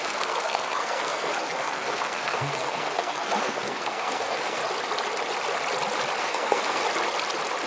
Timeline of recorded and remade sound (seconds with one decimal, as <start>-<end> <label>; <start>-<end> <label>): 0.0-4.6 remade; 4.6-6.2 recorded; 6.2-6.8 remade; 6.8-7.7 recorded